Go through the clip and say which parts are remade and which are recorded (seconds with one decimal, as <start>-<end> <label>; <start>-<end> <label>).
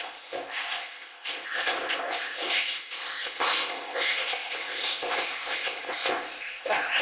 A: 0.0-7.0 remade